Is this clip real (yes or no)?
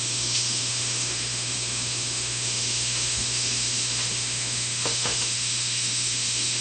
no